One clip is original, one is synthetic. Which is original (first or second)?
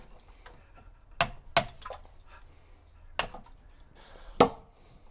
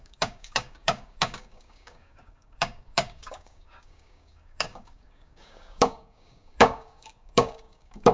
first